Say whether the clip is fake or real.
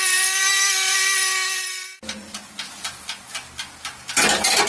real